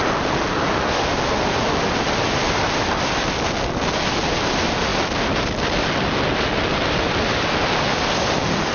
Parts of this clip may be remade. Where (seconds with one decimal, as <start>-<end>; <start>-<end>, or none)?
none